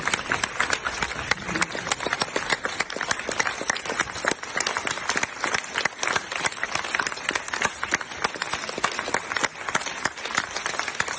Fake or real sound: fake